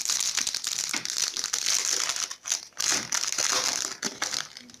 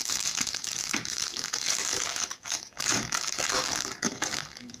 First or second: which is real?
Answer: first